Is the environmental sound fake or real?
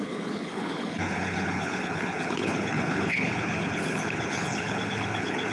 fake